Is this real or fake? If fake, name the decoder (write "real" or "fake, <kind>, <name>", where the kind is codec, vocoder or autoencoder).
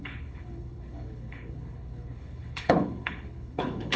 fake, codec, HILCodec